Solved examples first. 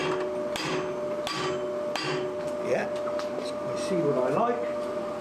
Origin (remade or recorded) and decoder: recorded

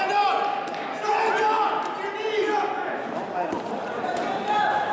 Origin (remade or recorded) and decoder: recorded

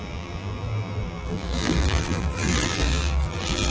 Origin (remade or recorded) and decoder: remade, vocoder, BigVGAN v2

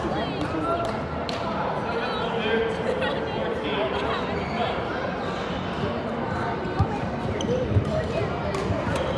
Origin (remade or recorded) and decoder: recorded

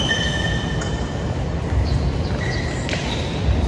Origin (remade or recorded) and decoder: recorded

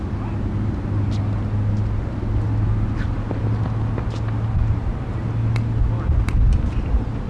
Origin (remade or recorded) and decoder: recorded